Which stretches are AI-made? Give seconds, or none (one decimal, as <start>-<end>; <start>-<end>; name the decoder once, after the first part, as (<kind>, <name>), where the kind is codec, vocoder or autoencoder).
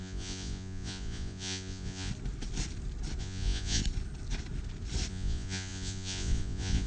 0.0-2.1 (vocoder, Vocos); 3.2-3.8; 5.1-6.9